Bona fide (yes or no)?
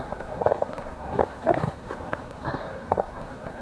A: no